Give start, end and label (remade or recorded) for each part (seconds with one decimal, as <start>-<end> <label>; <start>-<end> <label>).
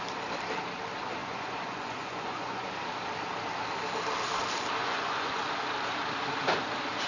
0.0-1.2 recorded; 1.2-2.7 remade; 2.7-4.8 recorded; 4.8-5.4 remade; 5.4-7.1 recorded